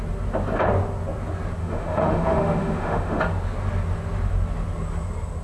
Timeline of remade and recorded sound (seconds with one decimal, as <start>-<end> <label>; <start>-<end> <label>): 0.0-1.6 recorded; 1.6-3.2 remade; 3.2-5.4 recorded